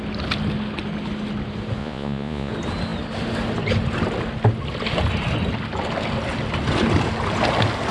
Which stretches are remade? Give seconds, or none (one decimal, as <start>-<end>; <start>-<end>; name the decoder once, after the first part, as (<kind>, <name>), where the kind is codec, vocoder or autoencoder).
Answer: 1.8-2.5 (vocoder, Vocos)